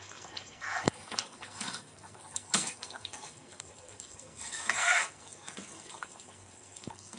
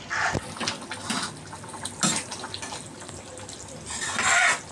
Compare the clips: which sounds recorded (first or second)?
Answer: second